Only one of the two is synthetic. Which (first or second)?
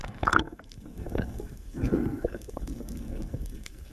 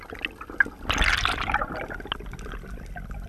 first